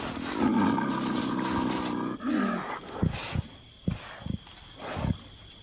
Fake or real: real